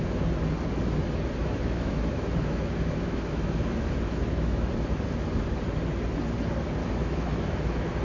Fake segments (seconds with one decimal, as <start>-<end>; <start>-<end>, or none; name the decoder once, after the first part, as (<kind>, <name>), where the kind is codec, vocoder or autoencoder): 1.4-4.7 (autoencoder, DAC-VAE); 6.8-8.0

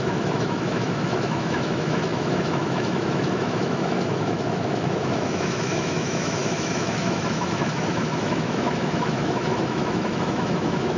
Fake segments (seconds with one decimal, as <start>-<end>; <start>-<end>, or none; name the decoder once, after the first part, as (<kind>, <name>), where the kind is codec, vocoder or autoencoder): 0.0-11.0 (autoencoder, DAC-VAE)

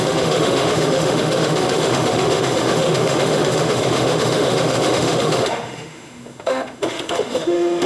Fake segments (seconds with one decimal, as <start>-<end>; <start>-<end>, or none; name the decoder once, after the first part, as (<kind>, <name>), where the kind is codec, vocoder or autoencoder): 0.0-7.9 (autoencoder, DAC-VAE)

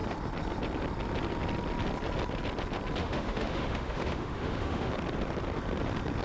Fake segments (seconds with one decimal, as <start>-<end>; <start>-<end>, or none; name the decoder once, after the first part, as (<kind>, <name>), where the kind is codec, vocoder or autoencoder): 3.0-4.9 (autoencoder, DAC-VAE)

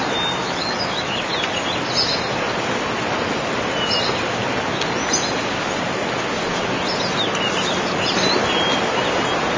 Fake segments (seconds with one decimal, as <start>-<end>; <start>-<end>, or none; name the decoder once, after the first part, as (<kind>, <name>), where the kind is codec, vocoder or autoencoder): 0.4-1.3 (autoencoder, DAC-VAE)

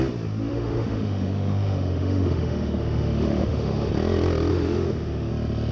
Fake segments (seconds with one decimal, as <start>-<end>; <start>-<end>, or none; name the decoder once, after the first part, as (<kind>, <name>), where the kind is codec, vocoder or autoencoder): 0.5-3.9 (autoencoder, DAC-VAE); 4.5-5.3

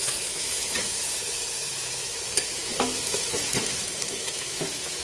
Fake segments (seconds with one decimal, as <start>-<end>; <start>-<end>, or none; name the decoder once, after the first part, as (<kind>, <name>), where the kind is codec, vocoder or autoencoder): 0.0-5.0 (autoencoder, DAC-VAE)